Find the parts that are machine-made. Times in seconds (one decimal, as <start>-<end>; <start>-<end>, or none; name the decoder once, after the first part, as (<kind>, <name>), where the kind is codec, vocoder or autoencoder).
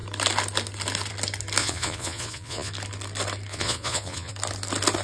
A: 1.6-2.7 (vocoder, Vocos); 3.5-4.3